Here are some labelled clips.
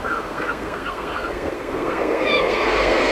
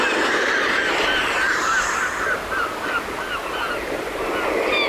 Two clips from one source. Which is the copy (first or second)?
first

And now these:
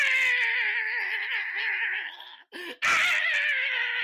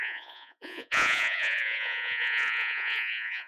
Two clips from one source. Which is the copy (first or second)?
second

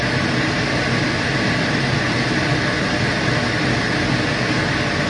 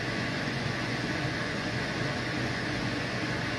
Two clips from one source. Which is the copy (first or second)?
second